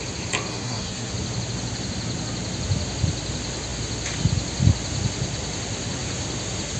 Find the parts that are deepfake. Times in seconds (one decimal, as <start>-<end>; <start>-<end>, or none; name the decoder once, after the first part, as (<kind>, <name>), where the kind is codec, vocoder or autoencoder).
0.5-1.1 (codec, SNAC)